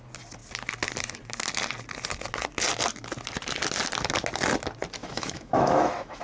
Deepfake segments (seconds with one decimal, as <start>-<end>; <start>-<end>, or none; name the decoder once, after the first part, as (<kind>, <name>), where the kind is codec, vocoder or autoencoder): 5.0-6.2 (autoencoder, DAC-VAE)